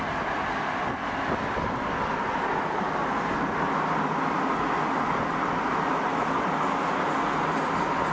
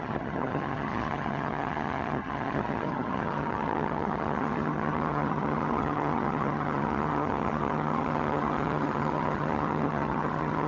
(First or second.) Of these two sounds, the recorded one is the first